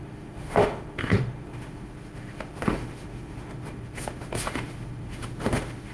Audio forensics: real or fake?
fake